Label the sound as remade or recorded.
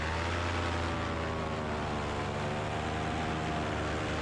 recorded